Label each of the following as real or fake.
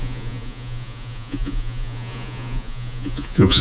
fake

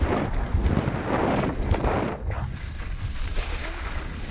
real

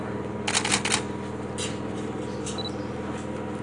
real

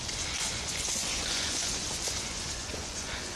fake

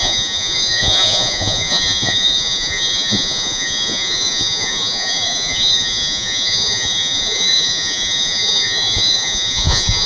fake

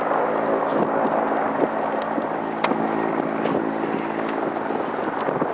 real